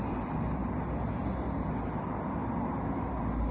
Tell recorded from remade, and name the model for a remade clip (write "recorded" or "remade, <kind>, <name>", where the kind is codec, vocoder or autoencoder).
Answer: recorded